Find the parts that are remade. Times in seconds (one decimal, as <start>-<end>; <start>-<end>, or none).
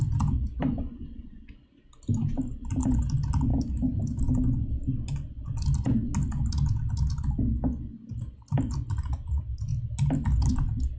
3.5-4.2